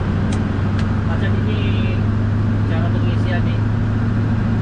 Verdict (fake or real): real